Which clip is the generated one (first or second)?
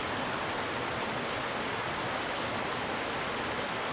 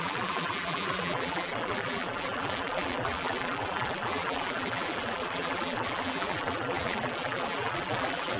second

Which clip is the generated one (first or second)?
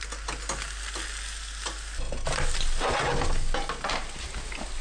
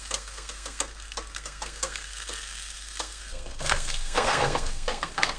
second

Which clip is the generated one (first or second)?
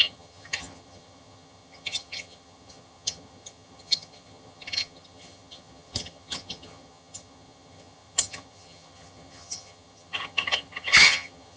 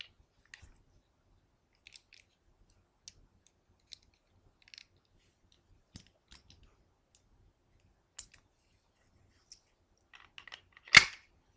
first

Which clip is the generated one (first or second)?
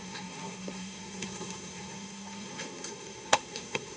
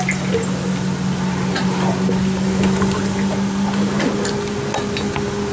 first